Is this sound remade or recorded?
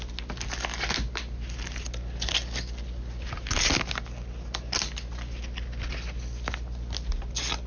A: recorded